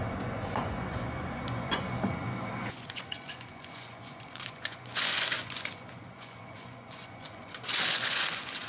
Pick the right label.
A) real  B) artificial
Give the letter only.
B